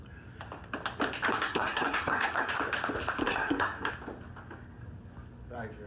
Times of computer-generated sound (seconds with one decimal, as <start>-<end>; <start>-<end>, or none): 1.3-2.5; 3.2-3.9